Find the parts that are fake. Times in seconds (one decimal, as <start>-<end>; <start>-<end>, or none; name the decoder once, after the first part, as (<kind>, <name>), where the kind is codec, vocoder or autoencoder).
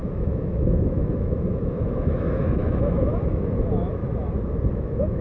0.0-4.0 (autoencoder, DAC-VAE); 4.7-5.2